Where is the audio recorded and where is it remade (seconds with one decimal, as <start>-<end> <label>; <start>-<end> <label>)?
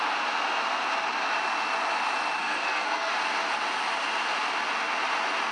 0.0-2.4 recorded; 2.4-3.1 remade; 3.1-5.5 recorded